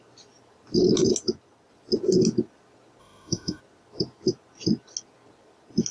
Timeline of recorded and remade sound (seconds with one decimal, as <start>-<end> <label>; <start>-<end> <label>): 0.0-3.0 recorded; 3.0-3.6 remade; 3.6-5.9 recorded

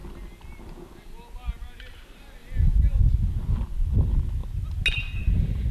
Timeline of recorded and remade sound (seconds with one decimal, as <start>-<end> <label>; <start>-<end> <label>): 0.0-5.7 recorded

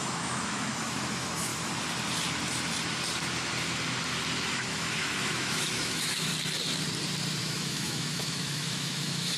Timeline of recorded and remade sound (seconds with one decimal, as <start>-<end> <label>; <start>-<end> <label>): 0.0-1.5 remade; 1.5-4.5 recorded; 4.5-6.3 remade; 6.3-7.4 recorded; 7.4-9.4 remade

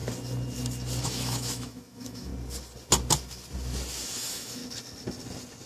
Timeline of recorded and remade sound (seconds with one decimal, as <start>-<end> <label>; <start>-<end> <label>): 0.0-1.0 recorded; 1.0-2.3 remade; 2.3-4.0 recorded; 4.0-4.6 remade; 4.6-5.7 recorded

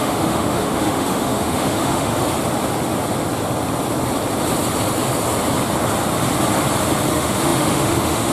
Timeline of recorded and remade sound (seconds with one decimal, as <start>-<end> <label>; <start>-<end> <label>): 0.0-2.1 remade; 2.1-7.1 recorded; 7.1-8.3 remade

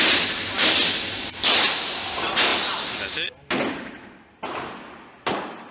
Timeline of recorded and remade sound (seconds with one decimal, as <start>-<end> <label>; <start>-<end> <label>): 0.0-5.7 recorded

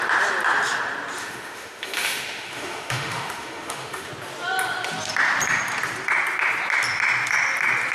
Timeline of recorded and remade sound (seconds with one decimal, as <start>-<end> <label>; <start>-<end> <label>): 0.0-1.2 recorded; 1.2-4.1 remade; 4.1-7.9 recorded

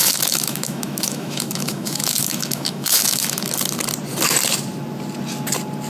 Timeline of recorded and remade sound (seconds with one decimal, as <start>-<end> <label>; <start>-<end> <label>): 0.0-3.5 remade; 3.5-5.9 recorded